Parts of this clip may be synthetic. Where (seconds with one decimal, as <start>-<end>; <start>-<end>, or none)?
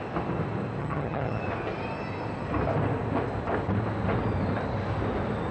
0.8-1.4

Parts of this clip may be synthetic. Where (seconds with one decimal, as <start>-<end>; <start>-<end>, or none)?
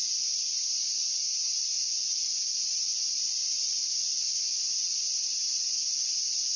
none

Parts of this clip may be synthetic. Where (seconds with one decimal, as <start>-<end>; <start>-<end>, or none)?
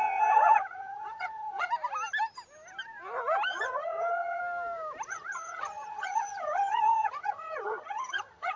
0.0-1.7; 3.5-4.4; 5.1-8.6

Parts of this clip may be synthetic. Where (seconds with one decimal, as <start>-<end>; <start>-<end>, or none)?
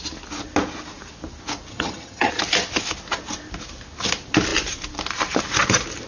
1.7-2.3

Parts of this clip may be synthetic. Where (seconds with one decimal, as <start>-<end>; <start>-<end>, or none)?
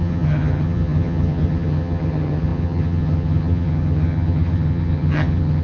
0.0-5.6